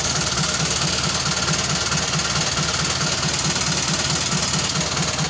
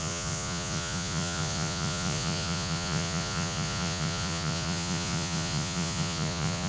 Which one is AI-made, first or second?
second